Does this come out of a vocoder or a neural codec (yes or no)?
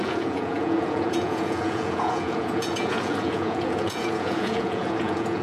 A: yes